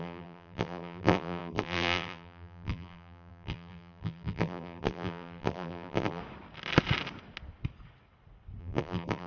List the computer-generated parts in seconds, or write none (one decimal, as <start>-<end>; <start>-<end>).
0.0-6.2; 8.6-9.3